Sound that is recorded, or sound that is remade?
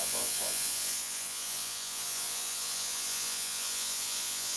remade